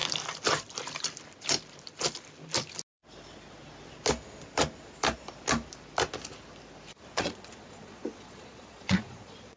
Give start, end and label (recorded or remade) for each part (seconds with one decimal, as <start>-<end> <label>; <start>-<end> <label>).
0.0-7.1 recorded; 7.1-9.6 remade